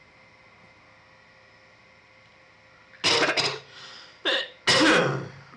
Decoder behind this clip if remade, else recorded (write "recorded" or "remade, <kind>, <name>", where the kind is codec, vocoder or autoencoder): recorded